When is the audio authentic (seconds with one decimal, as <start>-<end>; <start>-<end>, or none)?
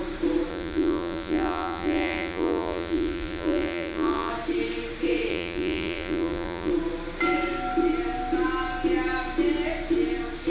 0.0-0.5; 4.3-5.3; 6.7-10.5